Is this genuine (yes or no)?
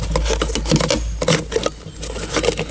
yes